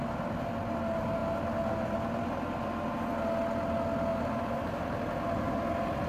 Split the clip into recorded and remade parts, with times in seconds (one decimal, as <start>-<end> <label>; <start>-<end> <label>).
0.0-4.1 recorded; 4.1-4.8 remade; 4.8-6.1 recorded

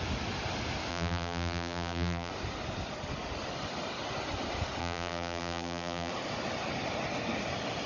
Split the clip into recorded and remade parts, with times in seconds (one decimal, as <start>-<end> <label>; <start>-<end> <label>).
0.0-0.9 recorded; 0.9-2.3 remade; 2.3-4.8 recorded; 4.8-6.1 remade; 6.1-7.9 recorded